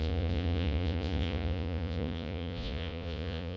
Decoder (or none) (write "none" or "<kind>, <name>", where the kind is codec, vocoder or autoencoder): vocoder, Vocos